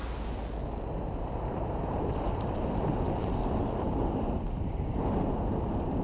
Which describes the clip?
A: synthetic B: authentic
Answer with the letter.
B